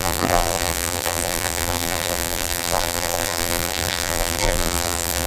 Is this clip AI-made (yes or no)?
yes